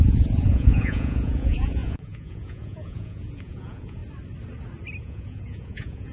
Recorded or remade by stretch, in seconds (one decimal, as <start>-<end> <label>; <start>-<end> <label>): 0.0-4.0 remade; 4.0-5.0 recorded; 5.0-6.1 remade